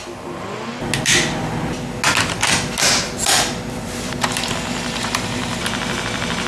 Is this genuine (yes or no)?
yes